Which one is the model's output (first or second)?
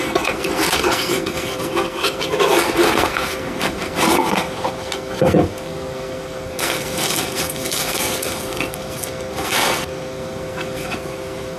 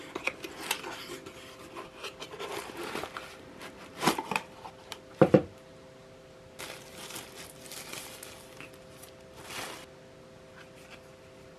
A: first